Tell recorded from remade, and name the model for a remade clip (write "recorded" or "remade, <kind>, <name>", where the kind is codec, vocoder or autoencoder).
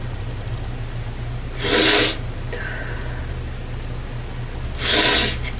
recorded